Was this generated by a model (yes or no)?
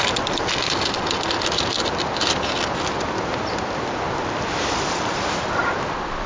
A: yes